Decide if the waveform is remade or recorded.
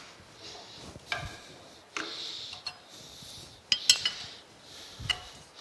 recorded